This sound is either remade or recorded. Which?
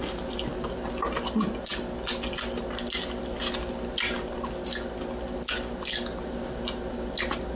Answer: recorded